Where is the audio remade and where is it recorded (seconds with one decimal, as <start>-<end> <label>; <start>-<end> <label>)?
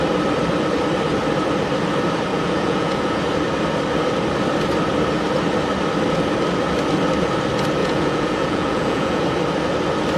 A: 0.0-2.3 recorded; 2.3-3.2 remade; 3.2-7.8 recorded; 7.8-9.2 remade; 9.2-10.2 recorded